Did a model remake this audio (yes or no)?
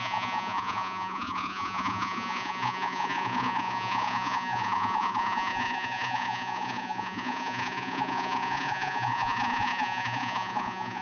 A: yes